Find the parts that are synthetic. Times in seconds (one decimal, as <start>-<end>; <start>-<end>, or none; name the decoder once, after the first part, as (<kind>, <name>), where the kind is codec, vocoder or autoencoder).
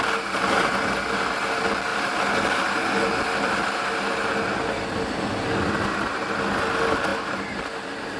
none